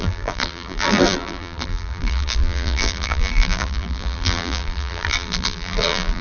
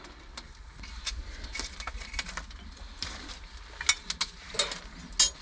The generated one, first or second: first